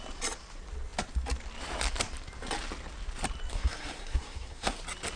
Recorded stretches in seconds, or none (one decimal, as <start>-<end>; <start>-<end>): 0.0-3.5; 4.8-5.2